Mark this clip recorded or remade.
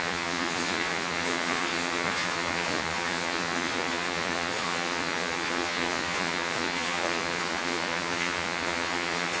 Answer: remade